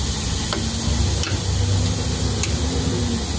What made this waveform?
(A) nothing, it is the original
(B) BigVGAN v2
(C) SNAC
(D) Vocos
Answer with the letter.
A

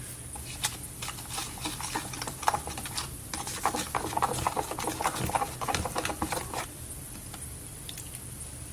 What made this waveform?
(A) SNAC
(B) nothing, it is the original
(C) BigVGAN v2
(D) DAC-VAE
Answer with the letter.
B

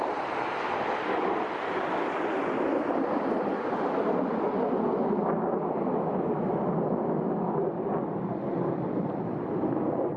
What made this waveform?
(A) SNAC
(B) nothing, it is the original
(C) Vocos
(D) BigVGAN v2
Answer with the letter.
B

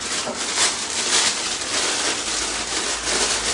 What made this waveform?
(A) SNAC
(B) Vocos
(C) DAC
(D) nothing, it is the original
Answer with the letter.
D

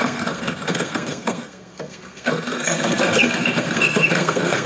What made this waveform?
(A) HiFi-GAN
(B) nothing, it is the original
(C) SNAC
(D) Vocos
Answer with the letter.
C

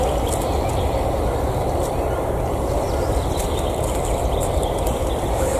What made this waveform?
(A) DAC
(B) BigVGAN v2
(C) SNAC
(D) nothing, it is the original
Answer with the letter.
D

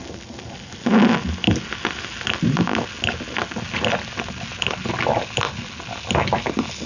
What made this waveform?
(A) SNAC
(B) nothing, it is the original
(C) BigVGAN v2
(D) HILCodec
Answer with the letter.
B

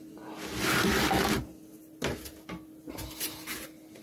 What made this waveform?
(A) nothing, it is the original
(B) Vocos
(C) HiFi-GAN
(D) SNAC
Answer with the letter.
A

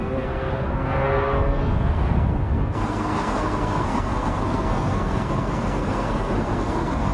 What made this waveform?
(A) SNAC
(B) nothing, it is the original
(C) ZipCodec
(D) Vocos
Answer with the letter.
A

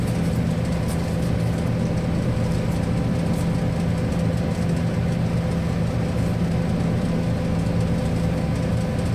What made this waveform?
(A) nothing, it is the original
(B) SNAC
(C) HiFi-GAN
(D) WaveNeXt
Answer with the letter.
A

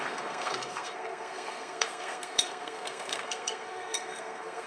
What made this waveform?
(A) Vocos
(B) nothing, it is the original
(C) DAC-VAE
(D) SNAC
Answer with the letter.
D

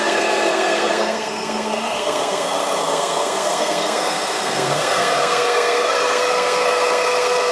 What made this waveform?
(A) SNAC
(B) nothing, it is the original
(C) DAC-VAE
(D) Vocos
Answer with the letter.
A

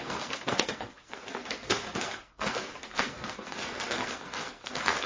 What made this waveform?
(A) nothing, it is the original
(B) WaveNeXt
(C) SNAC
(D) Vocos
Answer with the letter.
C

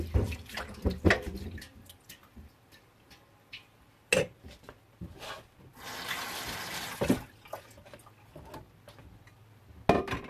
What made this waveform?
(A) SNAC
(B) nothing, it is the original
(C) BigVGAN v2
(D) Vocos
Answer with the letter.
B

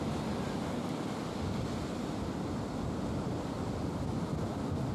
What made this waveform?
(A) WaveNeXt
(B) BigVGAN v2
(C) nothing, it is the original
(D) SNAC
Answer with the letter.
C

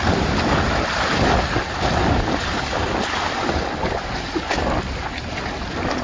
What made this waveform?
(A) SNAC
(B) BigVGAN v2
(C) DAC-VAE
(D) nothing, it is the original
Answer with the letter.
D